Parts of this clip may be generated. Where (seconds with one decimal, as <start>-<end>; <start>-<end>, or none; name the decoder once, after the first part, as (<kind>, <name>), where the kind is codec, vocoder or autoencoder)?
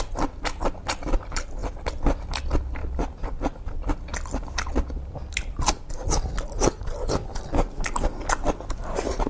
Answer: none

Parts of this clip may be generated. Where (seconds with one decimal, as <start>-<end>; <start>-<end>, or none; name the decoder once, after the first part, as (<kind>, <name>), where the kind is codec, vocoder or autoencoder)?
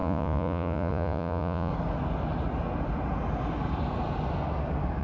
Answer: 0.0-1.7 (vocoder, Vocos)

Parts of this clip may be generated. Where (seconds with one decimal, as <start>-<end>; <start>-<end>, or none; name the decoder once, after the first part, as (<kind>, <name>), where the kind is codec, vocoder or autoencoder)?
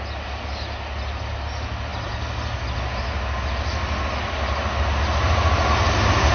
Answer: none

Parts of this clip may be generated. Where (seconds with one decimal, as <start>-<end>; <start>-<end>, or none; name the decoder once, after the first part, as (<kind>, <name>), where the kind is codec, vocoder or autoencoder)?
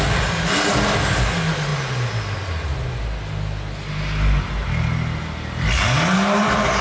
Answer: none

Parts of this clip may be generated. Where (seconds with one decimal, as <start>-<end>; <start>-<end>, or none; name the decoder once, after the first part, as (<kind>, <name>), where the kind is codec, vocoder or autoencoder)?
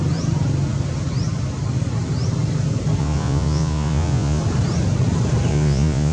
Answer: 3.0-4.4 (vocoder, Vocos); 5.5-6.1